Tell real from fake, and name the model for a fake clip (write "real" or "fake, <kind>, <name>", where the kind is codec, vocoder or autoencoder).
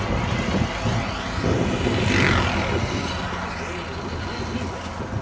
real